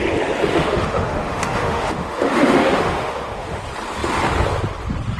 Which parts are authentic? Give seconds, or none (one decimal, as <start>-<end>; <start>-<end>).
0.0-0.5; 3.6-5.2

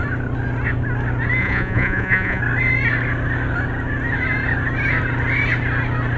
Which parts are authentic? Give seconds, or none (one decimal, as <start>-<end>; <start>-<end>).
0.0-1.4; 2.4-6.2

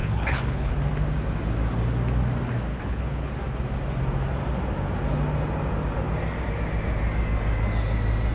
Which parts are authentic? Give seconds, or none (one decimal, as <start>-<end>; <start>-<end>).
0.7-2.7; 3.3-8.3

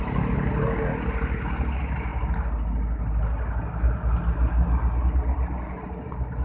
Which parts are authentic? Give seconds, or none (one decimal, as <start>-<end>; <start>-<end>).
0.0-6.4

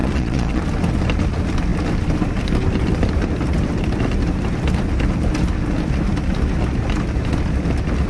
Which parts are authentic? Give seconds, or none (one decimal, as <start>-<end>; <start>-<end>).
0.6-8.1